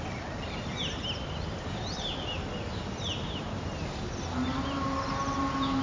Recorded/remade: recorded